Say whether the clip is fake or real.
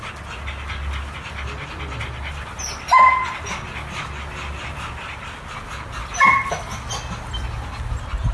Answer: real